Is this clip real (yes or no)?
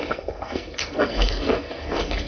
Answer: no